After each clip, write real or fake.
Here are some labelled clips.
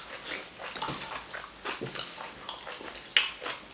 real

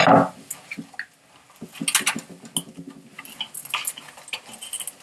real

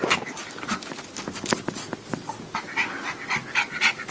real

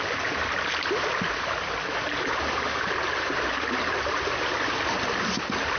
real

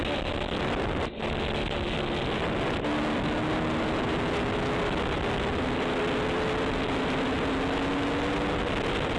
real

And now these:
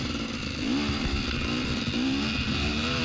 real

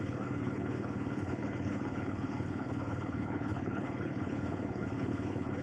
fake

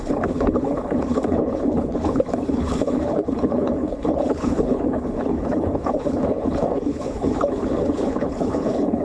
fake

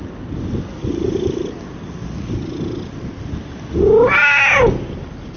real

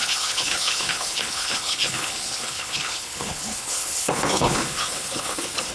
fake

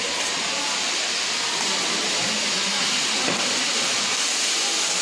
real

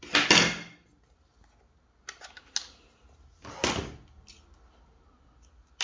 real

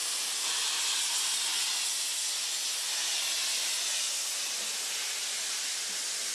real